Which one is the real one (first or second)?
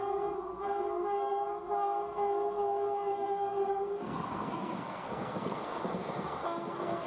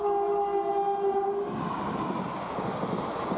second